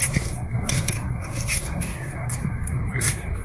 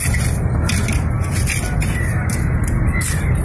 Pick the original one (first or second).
second